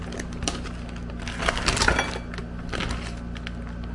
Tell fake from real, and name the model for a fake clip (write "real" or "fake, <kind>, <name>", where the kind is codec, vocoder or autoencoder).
real